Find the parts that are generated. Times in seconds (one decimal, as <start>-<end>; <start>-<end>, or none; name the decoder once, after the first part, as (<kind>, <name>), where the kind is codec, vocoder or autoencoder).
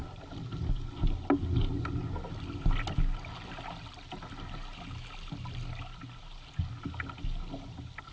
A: 0.0-1.0 (vocoder, BigVGAN v2)